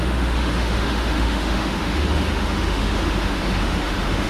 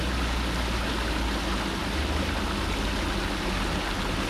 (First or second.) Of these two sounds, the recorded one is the second